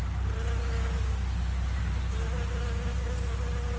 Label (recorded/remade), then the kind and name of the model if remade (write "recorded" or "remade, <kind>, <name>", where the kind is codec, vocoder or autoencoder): recorded